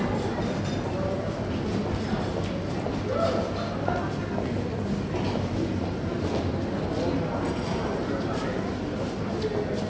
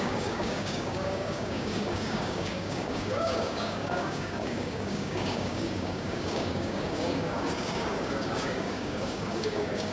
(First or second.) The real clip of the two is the first